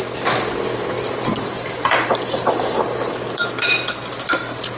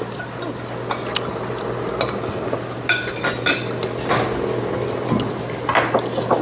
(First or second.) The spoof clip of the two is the first